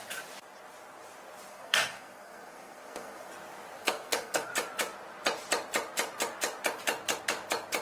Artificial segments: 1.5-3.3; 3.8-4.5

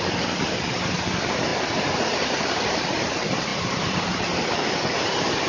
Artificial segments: 3.5-4.4

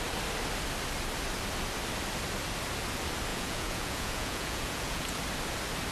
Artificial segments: 3.3-5.2